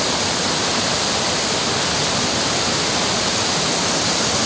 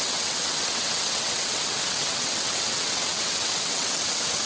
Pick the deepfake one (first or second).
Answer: second